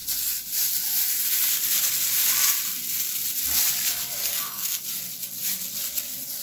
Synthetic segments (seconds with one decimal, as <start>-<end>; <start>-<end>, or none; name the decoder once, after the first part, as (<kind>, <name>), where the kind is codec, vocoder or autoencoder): 4.2-4.8 (codec, SNAC)